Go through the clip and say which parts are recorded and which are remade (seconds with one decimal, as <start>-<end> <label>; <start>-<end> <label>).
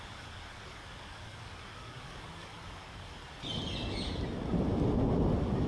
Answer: 0.0-3.2 remade; 3.2-5.7 recorded